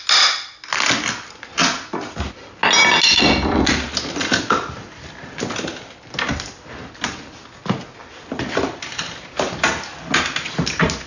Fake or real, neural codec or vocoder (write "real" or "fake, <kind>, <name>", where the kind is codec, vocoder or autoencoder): real